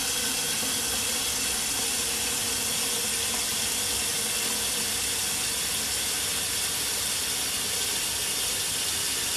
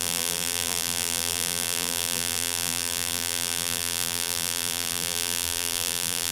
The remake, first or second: second